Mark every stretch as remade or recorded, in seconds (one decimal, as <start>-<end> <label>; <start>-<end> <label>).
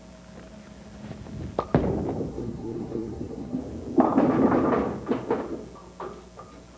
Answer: 0.0-2.3 recorded; 2.3-3.6 remade; 3.6-6.8 recorded